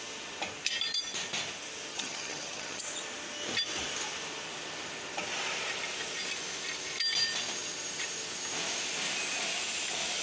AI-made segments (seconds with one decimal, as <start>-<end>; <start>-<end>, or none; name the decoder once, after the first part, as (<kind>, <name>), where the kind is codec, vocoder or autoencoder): 1.9-2.8 (vocoder, HiFi-GAN)